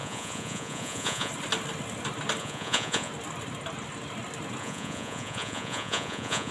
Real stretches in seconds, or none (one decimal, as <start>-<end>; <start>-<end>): 1.3-2.4; 3.1-4.6